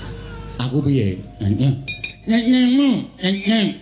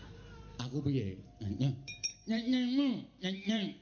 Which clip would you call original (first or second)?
first